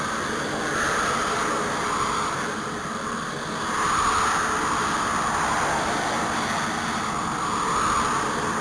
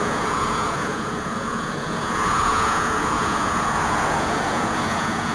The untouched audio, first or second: first